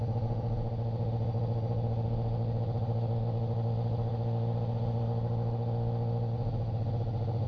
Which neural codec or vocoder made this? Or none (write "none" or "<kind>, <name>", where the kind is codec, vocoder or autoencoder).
none